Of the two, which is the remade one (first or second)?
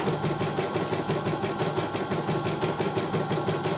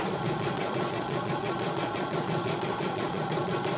second